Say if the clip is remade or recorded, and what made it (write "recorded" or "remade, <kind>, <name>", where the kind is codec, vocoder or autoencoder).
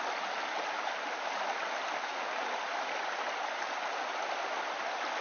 recorded